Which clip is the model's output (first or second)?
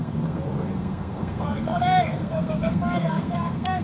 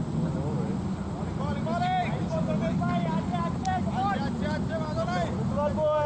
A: first